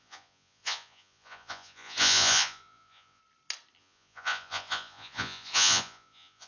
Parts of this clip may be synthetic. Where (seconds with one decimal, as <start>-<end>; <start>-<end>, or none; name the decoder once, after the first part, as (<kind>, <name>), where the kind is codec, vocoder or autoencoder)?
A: 0.0-3.2 (vocoder, Vocos); 3.8-6.5